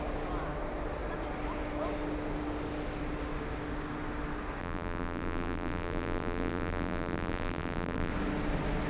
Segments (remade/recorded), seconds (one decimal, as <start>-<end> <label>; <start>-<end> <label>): 0.0-4.6 recorded; 4.6-8.1 remade; 8.1-8.9 recorded